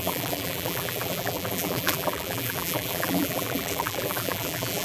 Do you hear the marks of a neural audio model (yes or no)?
yes